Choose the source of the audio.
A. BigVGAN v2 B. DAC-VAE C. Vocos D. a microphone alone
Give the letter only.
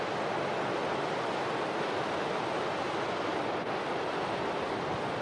D